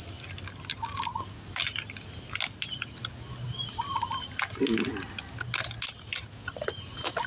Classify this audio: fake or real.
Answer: real